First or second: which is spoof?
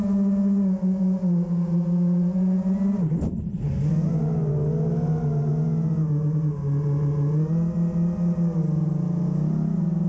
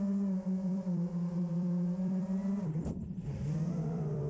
second